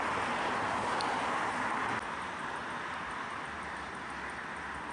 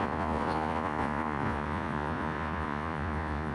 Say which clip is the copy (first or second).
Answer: second